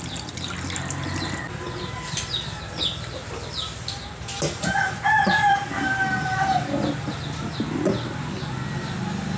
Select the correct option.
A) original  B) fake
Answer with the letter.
A